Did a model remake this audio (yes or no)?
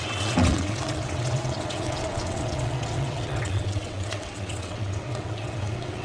yes